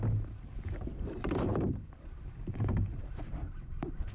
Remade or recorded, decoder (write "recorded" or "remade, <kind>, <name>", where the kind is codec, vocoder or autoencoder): remade, vocoder, BigVGAN v2